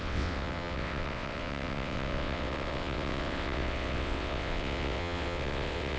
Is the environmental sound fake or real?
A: fake